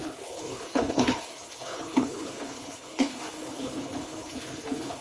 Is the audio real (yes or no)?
no